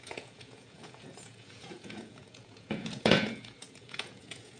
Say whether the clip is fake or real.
fake